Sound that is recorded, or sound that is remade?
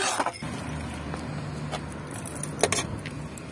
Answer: recorded